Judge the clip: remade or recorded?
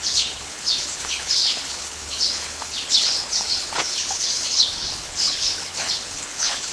remade